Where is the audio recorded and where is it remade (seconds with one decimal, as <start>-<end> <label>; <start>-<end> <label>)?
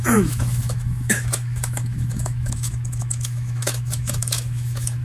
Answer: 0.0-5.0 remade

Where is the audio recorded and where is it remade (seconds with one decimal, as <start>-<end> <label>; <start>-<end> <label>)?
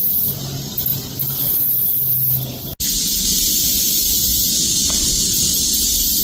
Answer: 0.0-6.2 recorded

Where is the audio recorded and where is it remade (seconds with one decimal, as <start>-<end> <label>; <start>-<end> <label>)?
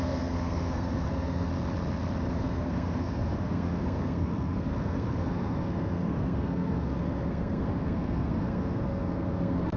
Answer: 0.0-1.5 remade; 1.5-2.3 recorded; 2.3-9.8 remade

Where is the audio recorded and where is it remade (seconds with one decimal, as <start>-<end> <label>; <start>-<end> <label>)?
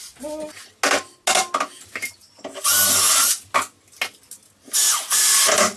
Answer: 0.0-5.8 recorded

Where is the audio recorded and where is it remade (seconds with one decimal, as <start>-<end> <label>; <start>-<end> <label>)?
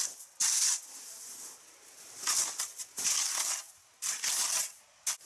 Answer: 0.0-5.3 recorded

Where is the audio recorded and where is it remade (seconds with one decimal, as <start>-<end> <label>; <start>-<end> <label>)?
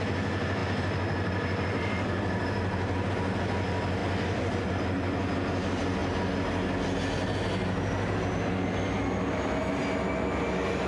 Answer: 0.0-4.0 recorded; 4.0-4.7 remade; 4.7-10.9 recorded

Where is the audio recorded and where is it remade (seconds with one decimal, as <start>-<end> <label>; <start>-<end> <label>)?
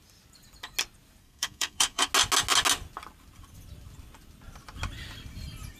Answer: 0.0-1.2 recorded; 1.2-2.1 remade; 2.1-5.8 recorded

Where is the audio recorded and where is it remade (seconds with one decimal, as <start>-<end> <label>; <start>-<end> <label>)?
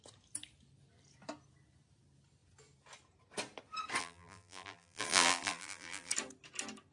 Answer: 0.0-4.0 recorded; 4.0-6.1 remade; 6.1-6.9 recorded